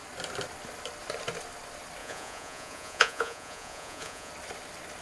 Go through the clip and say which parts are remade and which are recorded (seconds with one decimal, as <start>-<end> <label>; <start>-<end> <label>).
0.0-2.0 recorded; 2.0-4.3 remade; 4.3-5.0 recorded